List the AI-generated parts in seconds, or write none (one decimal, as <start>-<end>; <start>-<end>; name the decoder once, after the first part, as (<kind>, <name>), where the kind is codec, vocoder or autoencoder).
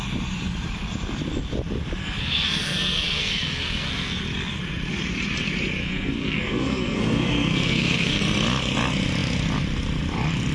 2.0-4.2 (codec, SNAC); 5.8-8.2